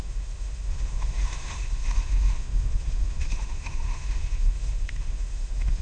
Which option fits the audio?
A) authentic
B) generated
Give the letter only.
B